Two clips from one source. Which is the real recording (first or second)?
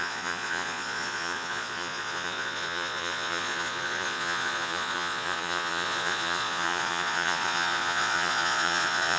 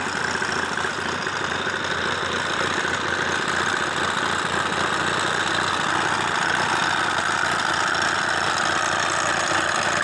second